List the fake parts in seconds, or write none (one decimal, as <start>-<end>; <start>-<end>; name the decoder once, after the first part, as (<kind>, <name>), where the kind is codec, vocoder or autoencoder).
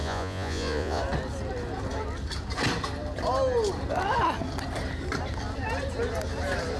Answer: 0.0-1.0 (vocoder, Vocos)